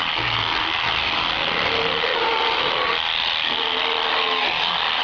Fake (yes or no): no